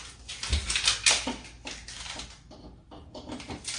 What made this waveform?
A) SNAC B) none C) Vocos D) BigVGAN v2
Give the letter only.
B